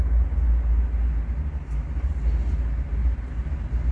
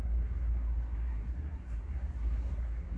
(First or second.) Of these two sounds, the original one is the first